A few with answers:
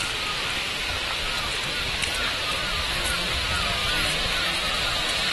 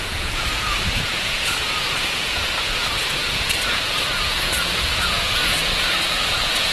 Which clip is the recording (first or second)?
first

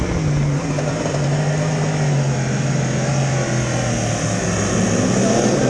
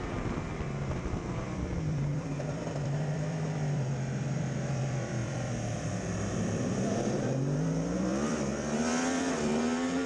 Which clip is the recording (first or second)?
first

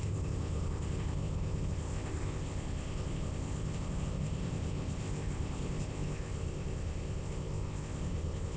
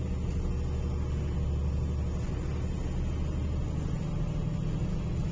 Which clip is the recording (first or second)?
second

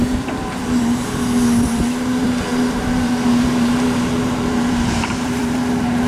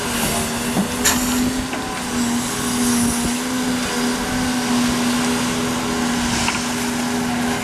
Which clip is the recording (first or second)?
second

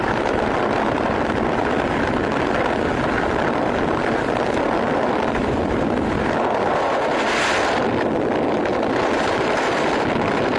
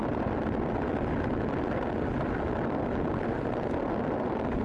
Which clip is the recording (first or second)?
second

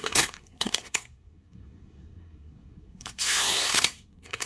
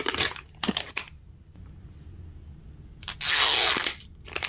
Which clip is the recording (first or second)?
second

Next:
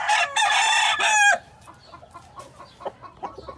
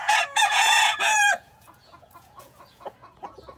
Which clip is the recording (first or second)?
first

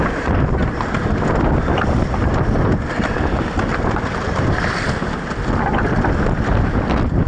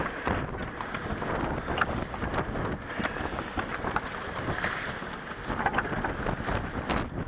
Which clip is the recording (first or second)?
second